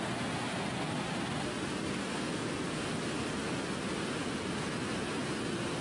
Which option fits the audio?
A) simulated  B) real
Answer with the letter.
B